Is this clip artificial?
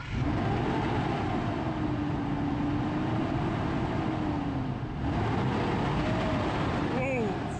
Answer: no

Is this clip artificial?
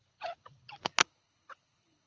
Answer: yes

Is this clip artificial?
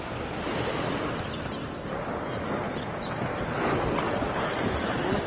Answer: no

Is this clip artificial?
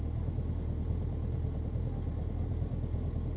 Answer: no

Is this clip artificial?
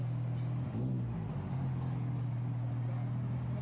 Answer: no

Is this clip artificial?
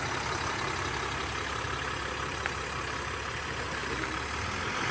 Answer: no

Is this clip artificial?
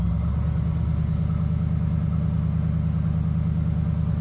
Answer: no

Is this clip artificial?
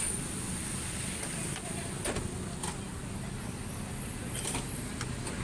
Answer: no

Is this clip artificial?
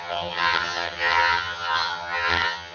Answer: yes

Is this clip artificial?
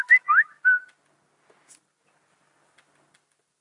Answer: no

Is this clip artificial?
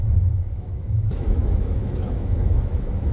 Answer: yes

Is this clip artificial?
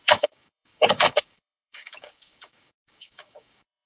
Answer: yes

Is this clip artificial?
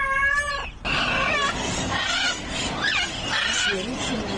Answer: no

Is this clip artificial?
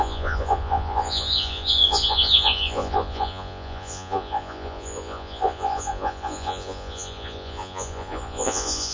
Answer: yes